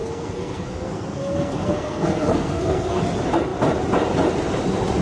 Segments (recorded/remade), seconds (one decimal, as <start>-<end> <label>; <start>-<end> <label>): 0.0-3.0 remade; 3.0-5.0 recorded